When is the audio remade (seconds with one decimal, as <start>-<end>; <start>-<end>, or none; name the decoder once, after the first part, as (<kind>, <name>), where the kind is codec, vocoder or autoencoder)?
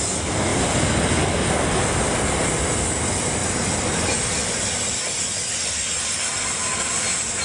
none